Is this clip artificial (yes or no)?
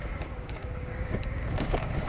yes